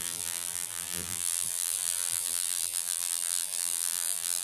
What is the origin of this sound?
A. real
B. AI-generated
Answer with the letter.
B